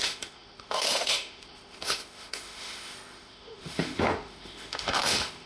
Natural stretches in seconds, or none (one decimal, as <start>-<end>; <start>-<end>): none